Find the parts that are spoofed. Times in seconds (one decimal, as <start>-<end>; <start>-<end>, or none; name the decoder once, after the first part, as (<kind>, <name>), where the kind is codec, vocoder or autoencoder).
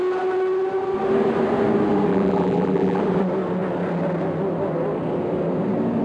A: 2.1-3.0 (vocoder, BigVGAN v2)